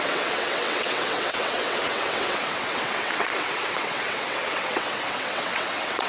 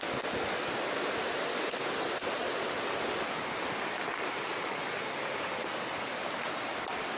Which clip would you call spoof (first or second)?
first